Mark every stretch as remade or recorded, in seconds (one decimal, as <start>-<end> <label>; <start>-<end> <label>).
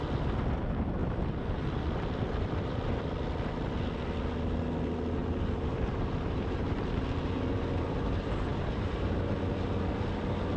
0.0-1.0 recorded; 1.0-2.8 remade; 2.8-5.2 recorded; 5.2-7.3 remade; 7.3-8.5 recorded; 8.5-9.3 remade; 9.3-10.6 recorded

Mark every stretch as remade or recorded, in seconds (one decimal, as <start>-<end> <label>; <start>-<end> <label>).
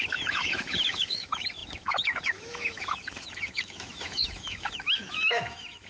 0.0-5.9 remade